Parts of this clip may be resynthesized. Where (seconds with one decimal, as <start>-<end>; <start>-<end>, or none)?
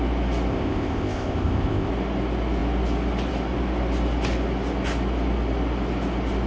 0.5-1.9